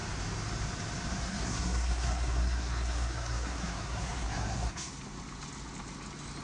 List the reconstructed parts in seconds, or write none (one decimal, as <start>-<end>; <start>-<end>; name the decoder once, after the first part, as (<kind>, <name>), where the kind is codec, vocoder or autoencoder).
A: 1.1-4.9 (codec, SNAC)